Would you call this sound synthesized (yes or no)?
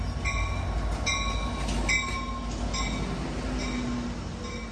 no